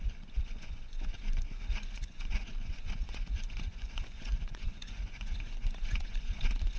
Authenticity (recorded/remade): remade